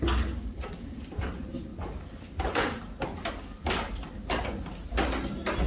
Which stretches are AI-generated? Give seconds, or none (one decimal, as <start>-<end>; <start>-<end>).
none